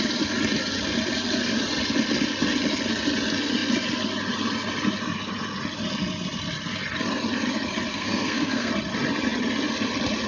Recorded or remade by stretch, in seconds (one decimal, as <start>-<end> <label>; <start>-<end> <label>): 0.0-7.9 recorded; 7.9-8.7 remade; 8.7-10.3 recorded